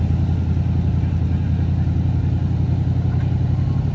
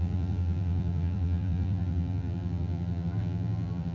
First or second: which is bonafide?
first